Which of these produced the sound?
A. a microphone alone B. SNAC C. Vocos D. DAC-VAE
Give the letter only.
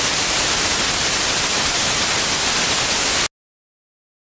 A